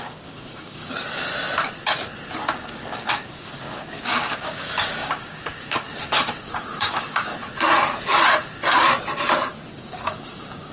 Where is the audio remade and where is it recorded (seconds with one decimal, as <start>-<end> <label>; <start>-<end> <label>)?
0.0-1.3 remade; 1.3-2.5 recorded; 2.5-7.3 remade; 7.3-9.7 recorded; 9.7-10.7 remade